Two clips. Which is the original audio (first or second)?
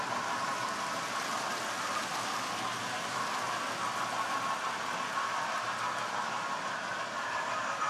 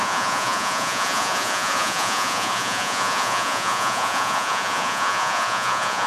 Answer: first